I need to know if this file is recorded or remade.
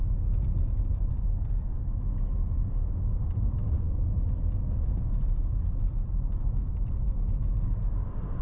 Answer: recorded